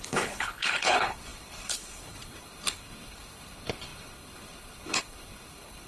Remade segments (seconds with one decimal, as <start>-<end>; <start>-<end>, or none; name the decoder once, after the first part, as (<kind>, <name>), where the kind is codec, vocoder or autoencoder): 0.0-5.9 (codec, HILCodec)